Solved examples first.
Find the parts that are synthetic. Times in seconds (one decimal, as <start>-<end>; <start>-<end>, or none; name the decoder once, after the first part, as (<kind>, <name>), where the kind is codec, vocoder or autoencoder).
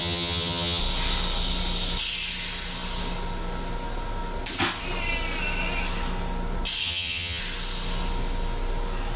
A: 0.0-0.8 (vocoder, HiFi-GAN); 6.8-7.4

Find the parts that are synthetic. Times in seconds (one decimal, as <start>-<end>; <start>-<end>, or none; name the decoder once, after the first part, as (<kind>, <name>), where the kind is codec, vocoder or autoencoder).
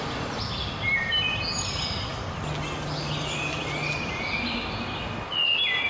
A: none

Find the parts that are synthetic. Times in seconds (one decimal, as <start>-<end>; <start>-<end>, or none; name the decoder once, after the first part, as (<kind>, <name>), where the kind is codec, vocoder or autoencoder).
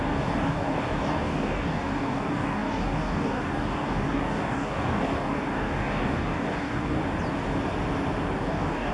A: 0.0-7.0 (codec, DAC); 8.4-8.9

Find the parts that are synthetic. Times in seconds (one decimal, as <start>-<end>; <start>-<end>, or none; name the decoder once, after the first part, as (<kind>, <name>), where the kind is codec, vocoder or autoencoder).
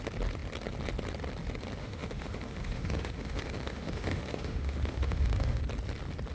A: 1.8-5.6 (autoencoder, DAC-VAE)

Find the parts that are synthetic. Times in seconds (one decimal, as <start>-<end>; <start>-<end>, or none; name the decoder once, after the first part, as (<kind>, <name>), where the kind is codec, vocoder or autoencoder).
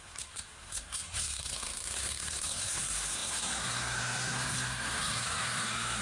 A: 0.0-6.0 (codec, SNAC)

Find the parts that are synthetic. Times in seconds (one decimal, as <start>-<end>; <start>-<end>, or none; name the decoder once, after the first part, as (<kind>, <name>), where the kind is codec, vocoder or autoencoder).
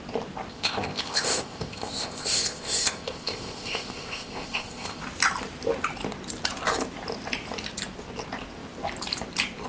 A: 0.5-5.0 (codec, ZipCodec)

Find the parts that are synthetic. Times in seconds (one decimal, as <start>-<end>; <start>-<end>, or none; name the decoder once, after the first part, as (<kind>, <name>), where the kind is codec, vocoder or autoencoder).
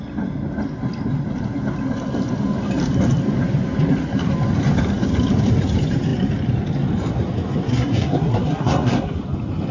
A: 7.7-9.2 (codec, SNAC)